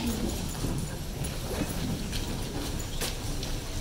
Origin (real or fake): real